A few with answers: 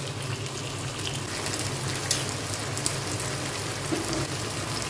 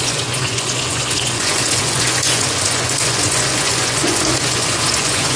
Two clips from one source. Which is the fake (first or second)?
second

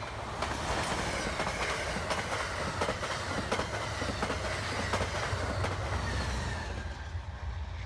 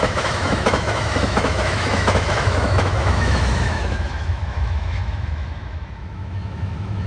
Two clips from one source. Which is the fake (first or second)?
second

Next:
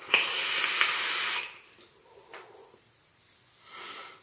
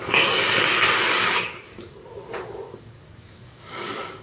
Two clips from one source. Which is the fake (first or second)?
second